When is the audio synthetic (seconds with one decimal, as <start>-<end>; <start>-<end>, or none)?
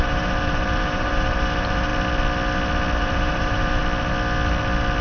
0.0-1.9; 3.0-3.8